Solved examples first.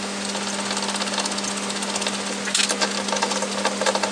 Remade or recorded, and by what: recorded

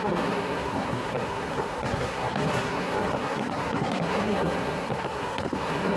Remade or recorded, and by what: remade, codec, SNAC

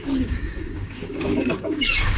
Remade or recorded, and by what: remade, codec, DAC